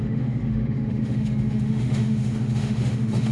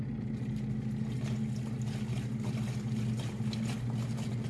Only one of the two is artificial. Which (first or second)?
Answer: first